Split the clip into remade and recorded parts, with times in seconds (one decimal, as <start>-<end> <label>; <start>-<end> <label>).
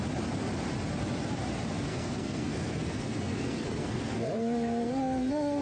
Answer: 0.0-1.9 recorded; 1.9-5.6 remade